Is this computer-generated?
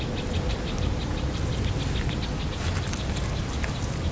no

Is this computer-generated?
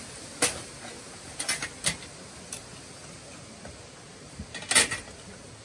no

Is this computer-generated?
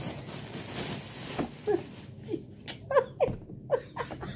no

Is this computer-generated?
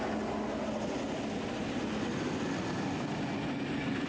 no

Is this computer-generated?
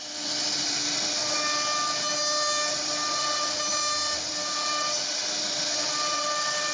no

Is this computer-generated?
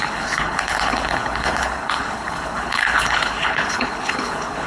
yes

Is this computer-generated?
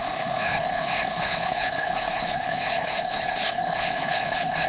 yes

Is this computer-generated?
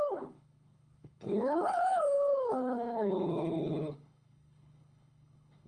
yes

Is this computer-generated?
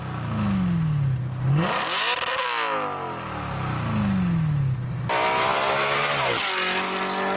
no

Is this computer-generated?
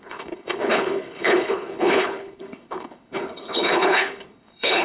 yes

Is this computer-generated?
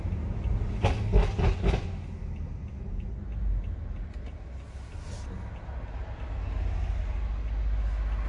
no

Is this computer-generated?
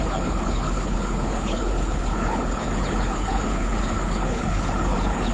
yes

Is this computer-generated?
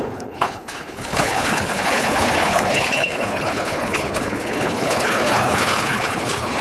yes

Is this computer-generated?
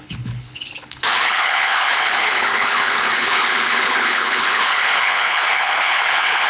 yes